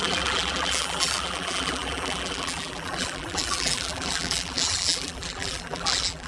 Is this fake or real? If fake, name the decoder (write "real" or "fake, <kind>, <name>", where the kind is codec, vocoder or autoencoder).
fake, vocoder, BigVGAN v2